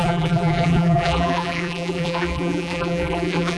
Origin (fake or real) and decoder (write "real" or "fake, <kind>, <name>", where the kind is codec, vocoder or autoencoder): fake, vocoder, BigVGAN v2